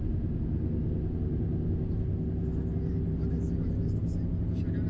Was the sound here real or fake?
real